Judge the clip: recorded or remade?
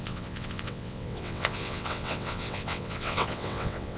remade